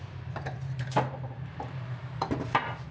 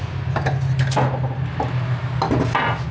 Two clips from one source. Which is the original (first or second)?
second